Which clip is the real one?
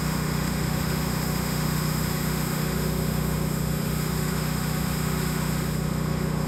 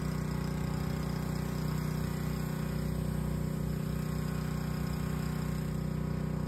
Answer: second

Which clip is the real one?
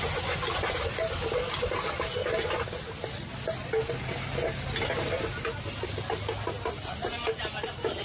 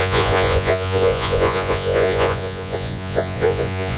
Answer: first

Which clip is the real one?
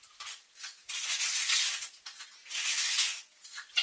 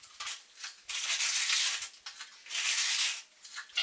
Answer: second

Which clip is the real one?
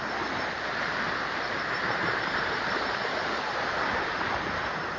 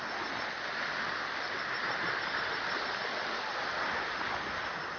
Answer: second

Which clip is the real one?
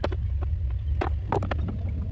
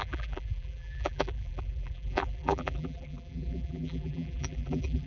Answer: first